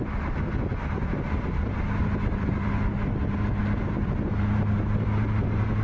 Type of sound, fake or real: real